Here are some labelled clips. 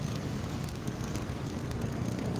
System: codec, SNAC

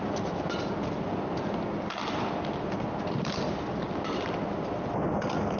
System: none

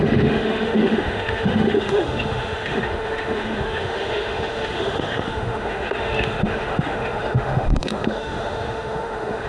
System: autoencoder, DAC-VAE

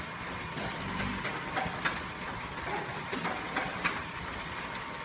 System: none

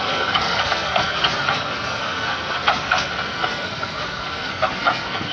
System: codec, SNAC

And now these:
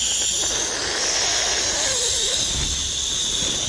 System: none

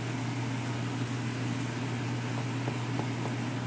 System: none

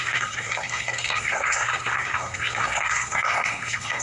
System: codec, SNAC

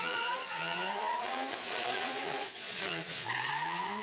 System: vocoder, Vocos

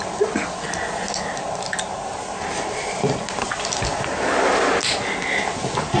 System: none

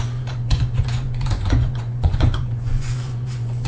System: vocoder, Vocos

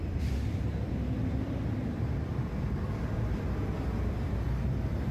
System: vocoder, BigVGAN v2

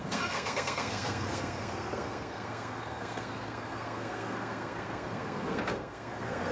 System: codec, SNAC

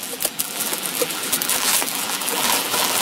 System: vocoder, BigVGAN v2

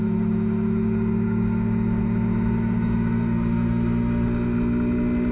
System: none